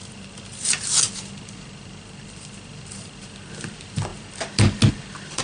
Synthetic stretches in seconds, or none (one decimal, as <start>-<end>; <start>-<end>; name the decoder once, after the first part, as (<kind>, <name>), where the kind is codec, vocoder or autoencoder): none